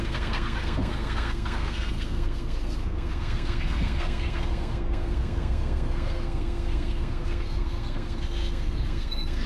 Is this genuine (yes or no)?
no